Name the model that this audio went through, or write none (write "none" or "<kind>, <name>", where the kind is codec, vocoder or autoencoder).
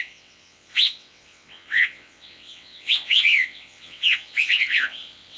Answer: vocoder, WaveNeXt